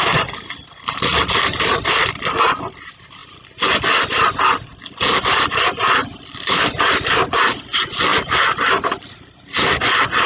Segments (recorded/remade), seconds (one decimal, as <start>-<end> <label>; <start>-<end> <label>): 0.0-8.1 recorded; 8.1-9.8 remade; 9.8-10.3 recorded